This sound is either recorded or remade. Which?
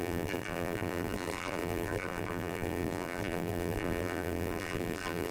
remade